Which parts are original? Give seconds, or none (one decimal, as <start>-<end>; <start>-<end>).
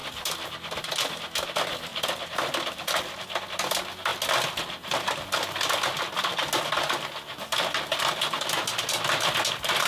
0.5-1.9; 3.0-9.9